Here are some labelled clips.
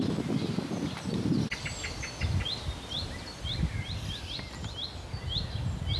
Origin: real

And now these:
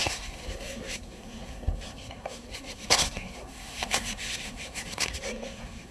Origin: fake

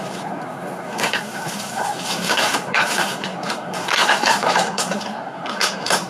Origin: fake